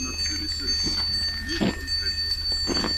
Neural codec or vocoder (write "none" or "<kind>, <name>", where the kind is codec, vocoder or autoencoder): none